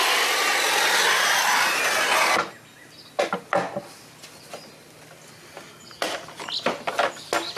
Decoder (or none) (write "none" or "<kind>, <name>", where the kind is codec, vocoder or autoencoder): none